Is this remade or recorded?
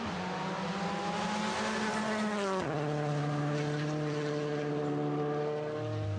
recorded